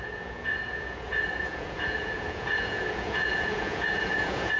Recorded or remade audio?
remade